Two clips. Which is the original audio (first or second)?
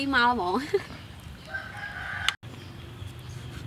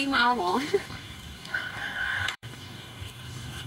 first